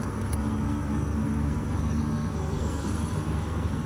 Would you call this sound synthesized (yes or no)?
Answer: yes